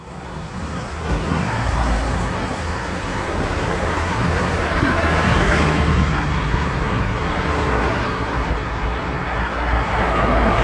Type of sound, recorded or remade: remade